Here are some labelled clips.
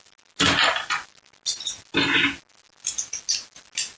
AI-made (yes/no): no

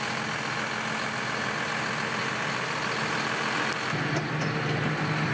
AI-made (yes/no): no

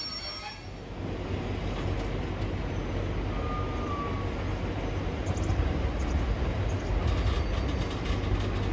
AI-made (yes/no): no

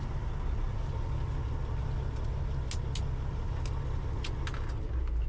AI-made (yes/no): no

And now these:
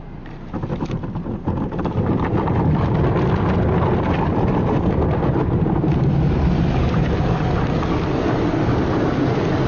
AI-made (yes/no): no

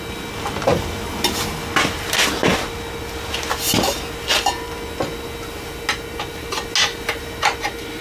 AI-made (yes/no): no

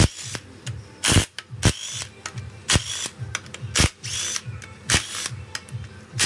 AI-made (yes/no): no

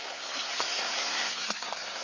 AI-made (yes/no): yes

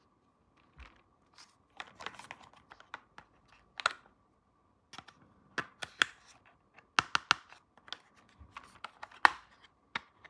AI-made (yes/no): no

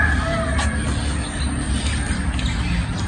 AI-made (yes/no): no